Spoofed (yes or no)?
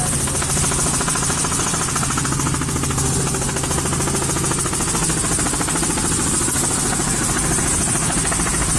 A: no